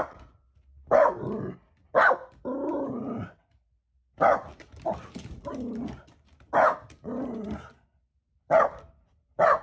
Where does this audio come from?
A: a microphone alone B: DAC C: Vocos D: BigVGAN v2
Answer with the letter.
A